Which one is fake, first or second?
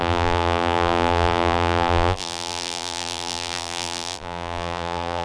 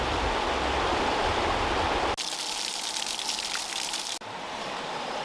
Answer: first